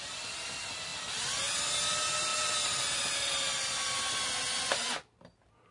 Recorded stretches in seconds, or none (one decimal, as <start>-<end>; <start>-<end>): 0.0-5.7